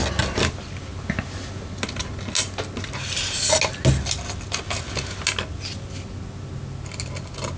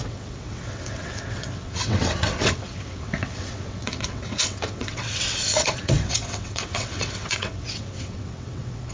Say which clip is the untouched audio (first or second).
first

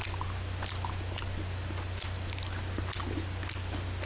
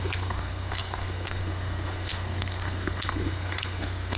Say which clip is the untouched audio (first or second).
first